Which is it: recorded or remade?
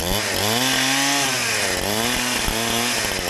recorded